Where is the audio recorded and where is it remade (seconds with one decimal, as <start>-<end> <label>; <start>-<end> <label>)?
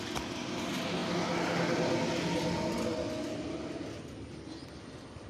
0.0-5.3 recorded